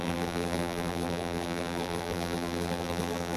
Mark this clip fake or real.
fake